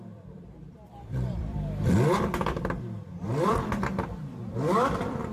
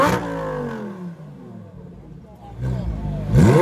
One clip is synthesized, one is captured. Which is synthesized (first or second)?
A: first